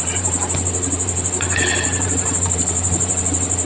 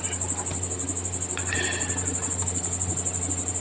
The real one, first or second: second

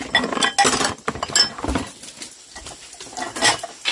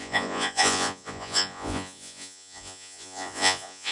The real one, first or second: first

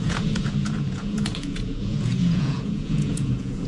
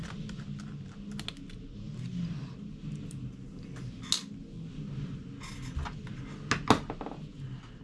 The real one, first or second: second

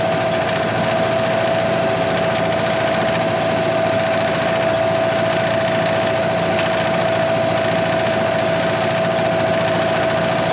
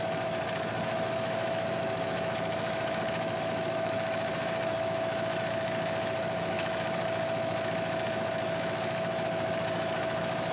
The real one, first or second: first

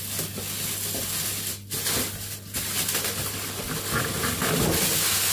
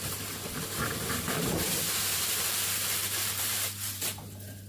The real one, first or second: first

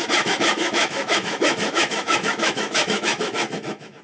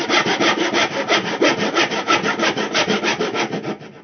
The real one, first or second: second